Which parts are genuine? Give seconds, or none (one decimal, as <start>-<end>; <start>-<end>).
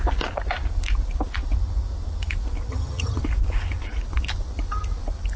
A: 0.0-2.7; 3.2-5.4